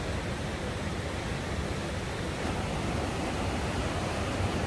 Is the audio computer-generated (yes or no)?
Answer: no